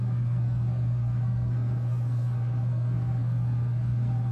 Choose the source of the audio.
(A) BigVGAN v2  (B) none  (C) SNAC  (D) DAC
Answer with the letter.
C